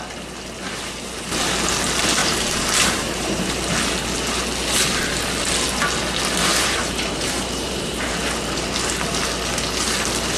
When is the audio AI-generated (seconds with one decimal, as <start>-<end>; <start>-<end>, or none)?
2.2-3.7; 6.5-8.2